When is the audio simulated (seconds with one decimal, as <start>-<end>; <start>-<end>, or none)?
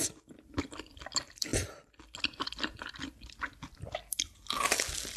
none